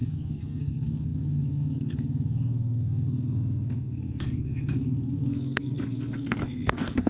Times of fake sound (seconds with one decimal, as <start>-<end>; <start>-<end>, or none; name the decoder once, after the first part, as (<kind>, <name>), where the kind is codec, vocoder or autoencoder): 0.0-7.1 (codec, SNAC)